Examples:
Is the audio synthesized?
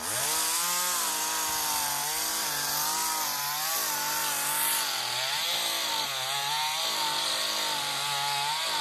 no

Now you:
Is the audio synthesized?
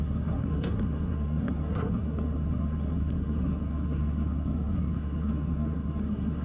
yes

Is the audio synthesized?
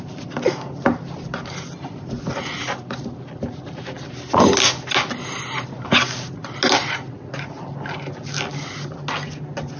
no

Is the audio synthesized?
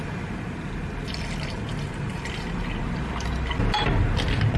no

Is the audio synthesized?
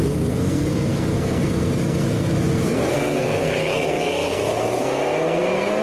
yes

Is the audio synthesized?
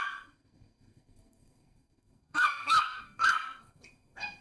yes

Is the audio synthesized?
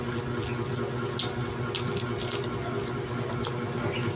no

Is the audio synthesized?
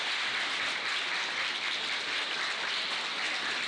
no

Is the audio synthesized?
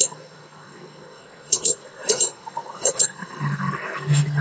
yes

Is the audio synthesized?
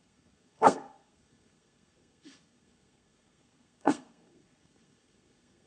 yes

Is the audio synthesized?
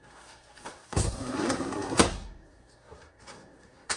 yes